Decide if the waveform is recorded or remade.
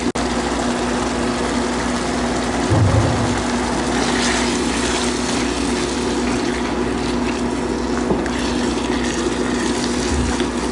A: recorded